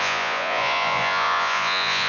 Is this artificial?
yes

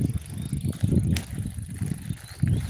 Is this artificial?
no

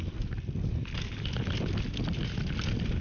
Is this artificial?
no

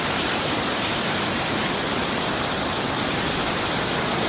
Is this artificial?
yes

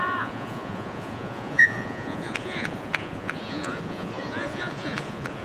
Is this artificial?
yes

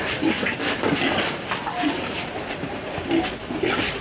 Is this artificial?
yes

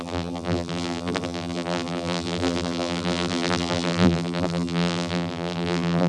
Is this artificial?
yes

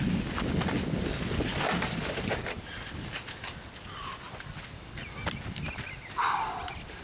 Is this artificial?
no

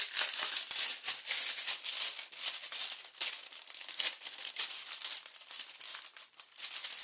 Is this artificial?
no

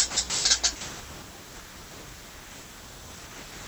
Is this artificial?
no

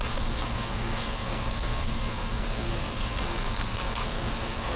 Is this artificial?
yes